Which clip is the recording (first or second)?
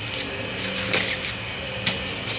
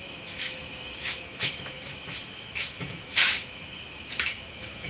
first